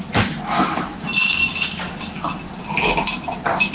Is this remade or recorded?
recorded